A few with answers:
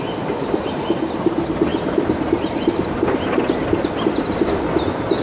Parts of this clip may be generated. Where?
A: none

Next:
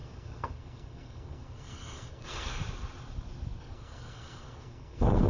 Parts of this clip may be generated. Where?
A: 0.0-2.6; 3.6-5.3

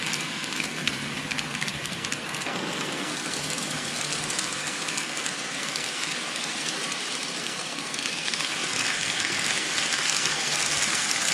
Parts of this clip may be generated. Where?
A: 0.0-6.8; 7.4-11.3